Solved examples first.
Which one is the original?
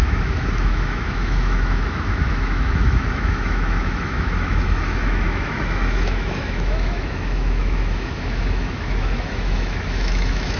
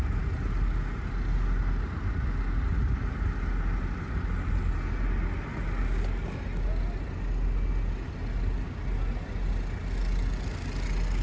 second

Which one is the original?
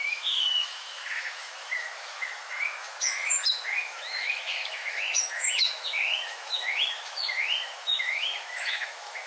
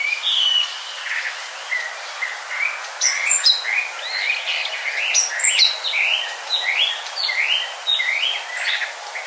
second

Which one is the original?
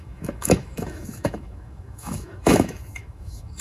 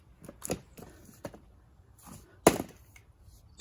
second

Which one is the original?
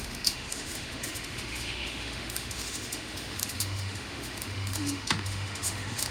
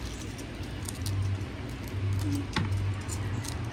second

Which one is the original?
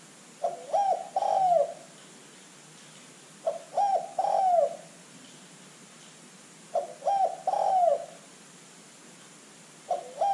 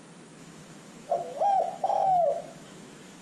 first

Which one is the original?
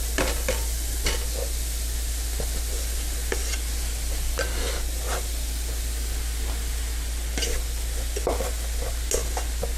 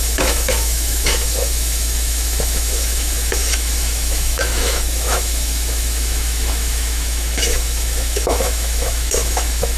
first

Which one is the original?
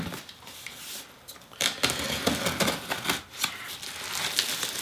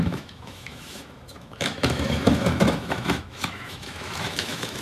first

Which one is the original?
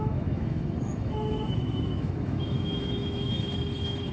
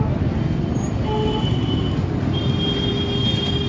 second